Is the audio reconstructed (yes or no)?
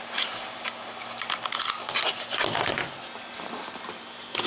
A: no